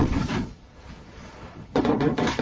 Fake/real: fake